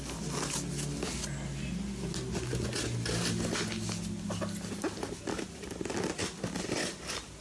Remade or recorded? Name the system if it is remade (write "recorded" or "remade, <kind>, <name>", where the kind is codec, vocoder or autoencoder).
recorded